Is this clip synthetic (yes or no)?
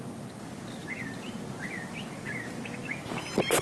no